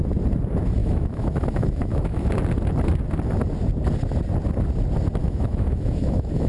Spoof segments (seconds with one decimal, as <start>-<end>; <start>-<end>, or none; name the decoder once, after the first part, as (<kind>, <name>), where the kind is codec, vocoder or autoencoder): 0.8-2.3 (autoencoder, DAC-VAE); 5.2-6.5